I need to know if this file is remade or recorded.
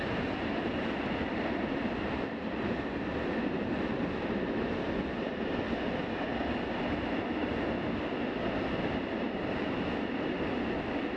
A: recorded